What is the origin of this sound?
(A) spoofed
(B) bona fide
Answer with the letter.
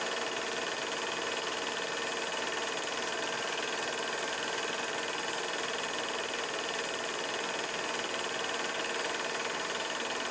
B